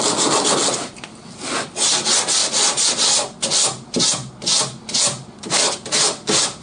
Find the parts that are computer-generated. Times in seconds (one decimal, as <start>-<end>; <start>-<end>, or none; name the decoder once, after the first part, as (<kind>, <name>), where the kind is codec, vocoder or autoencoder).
none